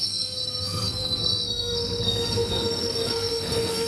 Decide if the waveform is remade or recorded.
remade